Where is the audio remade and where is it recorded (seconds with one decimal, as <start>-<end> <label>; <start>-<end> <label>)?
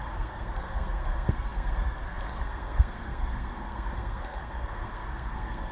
0.0-5.7 remade